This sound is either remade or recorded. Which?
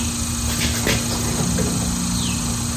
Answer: recorded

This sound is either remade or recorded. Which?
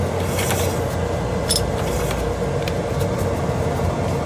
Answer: recorded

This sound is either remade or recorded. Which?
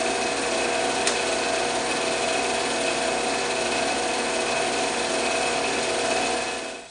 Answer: recorded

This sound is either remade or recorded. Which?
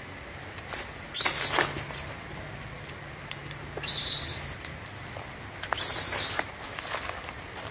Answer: recorded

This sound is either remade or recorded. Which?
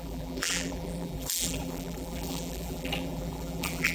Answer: remade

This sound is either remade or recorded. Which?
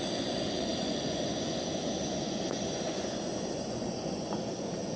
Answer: remade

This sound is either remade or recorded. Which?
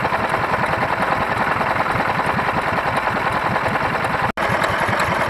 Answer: recorded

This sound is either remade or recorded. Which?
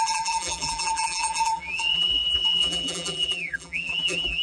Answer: remade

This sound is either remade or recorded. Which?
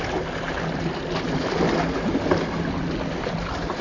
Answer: recorded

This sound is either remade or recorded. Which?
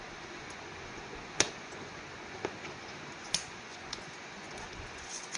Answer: remade